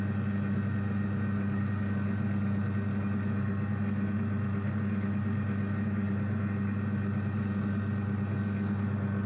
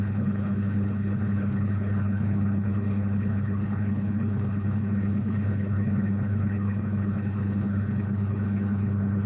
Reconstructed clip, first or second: second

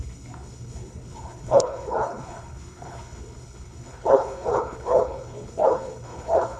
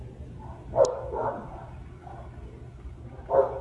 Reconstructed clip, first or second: first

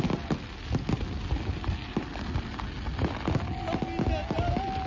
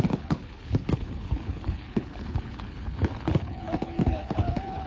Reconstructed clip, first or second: second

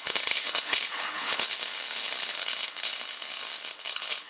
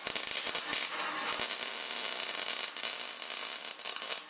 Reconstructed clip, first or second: first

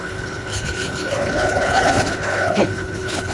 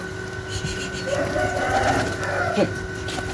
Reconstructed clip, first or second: first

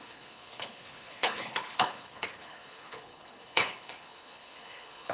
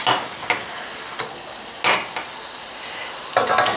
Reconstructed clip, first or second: first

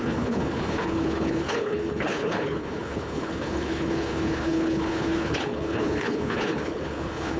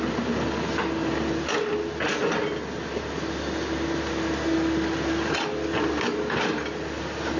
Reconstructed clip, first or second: first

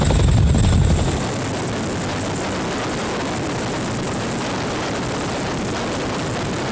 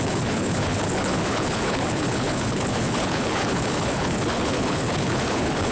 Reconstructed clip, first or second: second